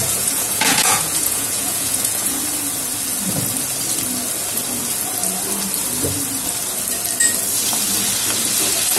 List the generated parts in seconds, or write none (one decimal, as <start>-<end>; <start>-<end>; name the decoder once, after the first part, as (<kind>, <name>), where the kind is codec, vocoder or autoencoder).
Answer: 0.0-2.4 (vocoder, Vocos)